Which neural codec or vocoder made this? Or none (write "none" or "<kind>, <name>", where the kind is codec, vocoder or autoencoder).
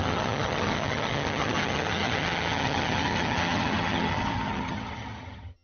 vocoder, HiFi-GAN